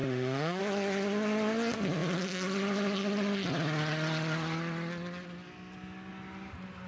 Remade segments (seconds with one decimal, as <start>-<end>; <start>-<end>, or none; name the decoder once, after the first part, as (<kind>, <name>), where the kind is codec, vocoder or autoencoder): 0.0-0.6 (autoencoder, DAC-VAE)